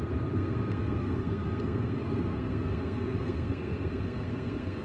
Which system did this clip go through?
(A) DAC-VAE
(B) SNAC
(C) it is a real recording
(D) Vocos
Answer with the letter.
B